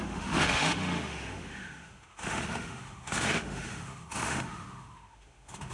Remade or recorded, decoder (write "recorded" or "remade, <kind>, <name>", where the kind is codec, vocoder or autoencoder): remade, autoencoder, DAC-VAE